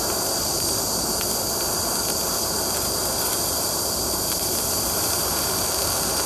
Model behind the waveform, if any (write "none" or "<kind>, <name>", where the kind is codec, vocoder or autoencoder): none